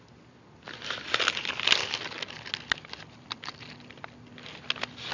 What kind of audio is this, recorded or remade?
recorded